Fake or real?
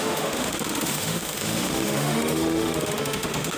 fake